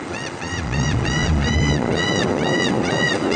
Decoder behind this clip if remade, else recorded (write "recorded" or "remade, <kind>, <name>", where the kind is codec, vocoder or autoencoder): remade, vocoder, Vocos